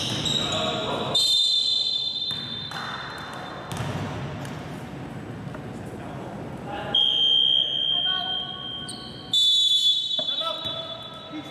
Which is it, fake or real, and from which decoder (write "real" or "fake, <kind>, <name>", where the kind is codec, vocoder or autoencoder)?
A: real